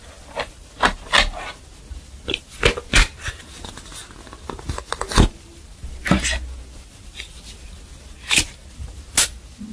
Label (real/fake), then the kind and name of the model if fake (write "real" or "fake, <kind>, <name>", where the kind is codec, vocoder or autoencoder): real